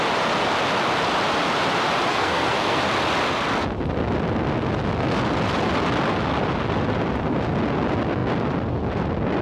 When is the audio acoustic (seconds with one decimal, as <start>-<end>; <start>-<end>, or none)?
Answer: 0.0-2.1; 2.8-9.4